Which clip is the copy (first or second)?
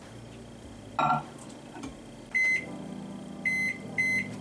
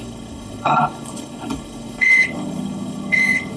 second